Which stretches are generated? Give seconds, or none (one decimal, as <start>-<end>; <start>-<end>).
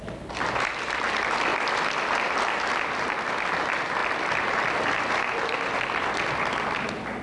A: none